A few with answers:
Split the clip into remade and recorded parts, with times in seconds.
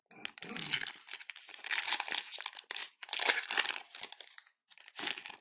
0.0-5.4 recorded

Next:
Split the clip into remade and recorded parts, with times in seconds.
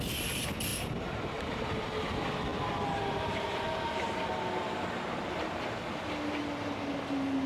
0.0-0.7 recorded; 0.7-1.8 remade; 1.8-7.5 recorded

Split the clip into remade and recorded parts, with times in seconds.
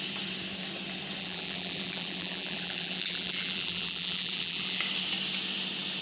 0.0-1.2 recorded; 1.2-4.8 remade; 4.8-6.0 recorded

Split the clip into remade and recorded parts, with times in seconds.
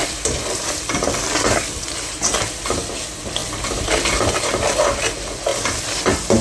0.0-1.8 remade; 1.8-3.4 recorded; 3.4-4.2 remade; 4.2-6.4 recorded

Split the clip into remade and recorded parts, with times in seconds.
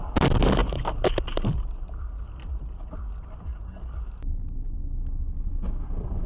0.0-0.6 recorded; 0.6-1.9 remade; 1.9-5.5 recorded; 5.5-6.3 remade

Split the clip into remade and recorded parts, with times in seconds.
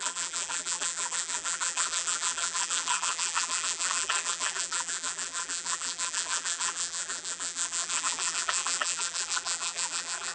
0.0-10.3 remade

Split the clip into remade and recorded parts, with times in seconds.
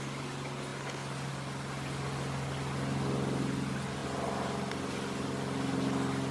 0.0-6.3 recorded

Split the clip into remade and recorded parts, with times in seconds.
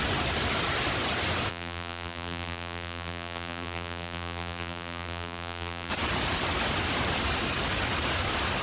0.0-1.5 recorded; 1.5-5.9 remade; 5.9-8.6 recorded